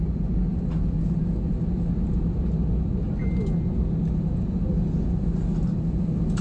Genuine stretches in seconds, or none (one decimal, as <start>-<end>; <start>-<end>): 0.0-6.4